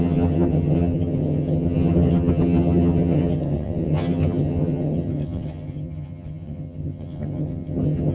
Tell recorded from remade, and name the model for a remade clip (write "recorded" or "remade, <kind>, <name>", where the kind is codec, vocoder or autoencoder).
remade, vocoder, HiFi-GAN